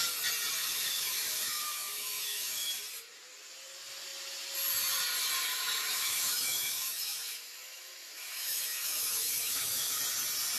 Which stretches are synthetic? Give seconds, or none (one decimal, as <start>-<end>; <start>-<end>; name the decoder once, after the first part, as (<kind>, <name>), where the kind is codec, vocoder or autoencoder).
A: 0.6-2.7 (autoencoder, DAC-VAE); 5.5-10.0